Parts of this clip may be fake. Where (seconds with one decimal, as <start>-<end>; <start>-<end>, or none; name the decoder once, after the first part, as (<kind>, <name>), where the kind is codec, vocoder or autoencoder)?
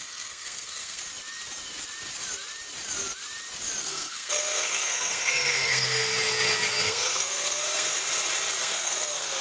0.0-1.0 (codec, SNAC); 3.8-6.1; 6.8-7.9; 8.6-9.4